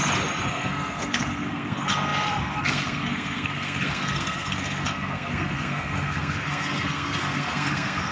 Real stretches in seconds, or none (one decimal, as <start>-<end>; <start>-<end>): 0.0-0.5